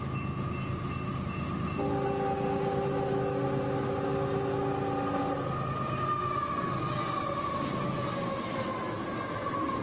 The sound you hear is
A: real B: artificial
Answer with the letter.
A